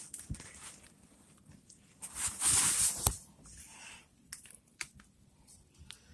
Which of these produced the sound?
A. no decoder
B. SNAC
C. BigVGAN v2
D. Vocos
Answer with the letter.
A